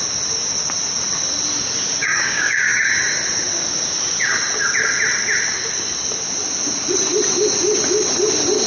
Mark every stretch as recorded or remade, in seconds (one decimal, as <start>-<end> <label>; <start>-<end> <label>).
0.0-2.0 recorded; 2.0-2.9 remade; 2.9-8.7 recorded

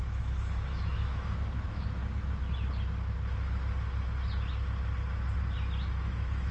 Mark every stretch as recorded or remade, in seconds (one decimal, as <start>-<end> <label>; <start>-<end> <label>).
0.0-2.0 remade; 2.0-5.9 recorded; 5.9-6.5 remade

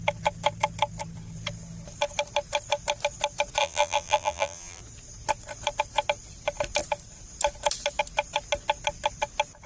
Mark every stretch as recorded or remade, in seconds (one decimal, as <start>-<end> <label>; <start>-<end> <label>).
0.0-3.6 recorded; 3.6-4.8 remade; 4.8-9.7 recorded

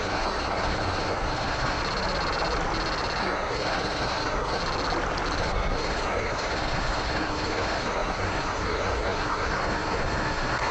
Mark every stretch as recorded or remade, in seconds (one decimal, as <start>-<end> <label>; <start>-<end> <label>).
0.0-1.8 remade; 1.8-3.2 recorded; 3.2-4.6 remade; 4.6-5.4 recorded; 5.4-10.7 remade

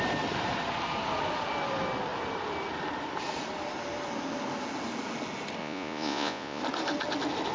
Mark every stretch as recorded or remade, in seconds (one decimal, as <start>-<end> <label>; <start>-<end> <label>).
0.0-5.6 recorded; 5.6-6.6 remade; 6.6-7.5 recorded

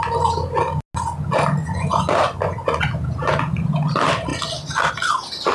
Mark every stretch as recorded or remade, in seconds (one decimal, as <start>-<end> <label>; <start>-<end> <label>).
0.0-1.6 recorded; 1.6-2.9 remade; 2.9-5.5 recorded

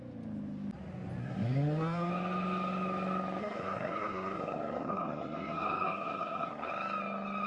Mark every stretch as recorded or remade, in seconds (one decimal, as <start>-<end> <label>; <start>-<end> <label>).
0.0-1.2 recorded; 1.2-2.1 remade; 2.1-3.4 recorded; 3.4-6.7 remade; 6.7-7.5 recorded

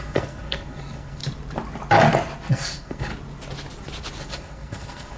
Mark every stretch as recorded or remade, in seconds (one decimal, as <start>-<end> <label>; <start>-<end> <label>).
0.0-1.2 remade; 1.2-2.5 recorded; 2.5-3.1 remade; 3.1-4.2 recorded; 4.2-5.2 remade